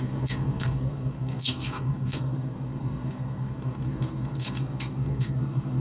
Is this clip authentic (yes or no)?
no